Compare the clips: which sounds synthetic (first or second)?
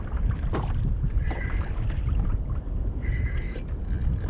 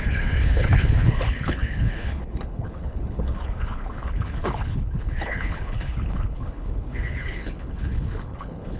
second